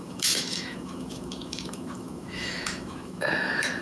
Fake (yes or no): yes